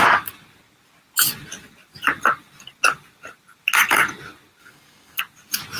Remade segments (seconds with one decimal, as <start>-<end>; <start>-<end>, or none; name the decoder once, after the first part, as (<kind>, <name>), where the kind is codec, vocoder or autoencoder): 4.6-5.2 (codec, SNAC)